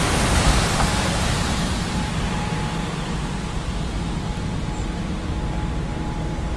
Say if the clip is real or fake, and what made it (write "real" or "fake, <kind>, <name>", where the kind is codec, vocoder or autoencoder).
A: fake, vocoder, BigVGAN v2